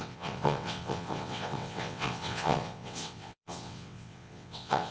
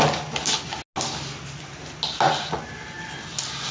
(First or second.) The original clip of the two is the second